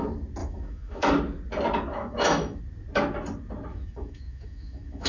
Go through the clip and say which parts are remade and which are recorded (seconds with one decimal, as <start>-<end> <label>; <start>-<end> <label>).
0.0-0.4 recorded; 0.4-1.1 remade; 1.1-1.9 recorded; 1.9-2.6 remade; 2.6-3.7 recorded; 3.7-5.1 remade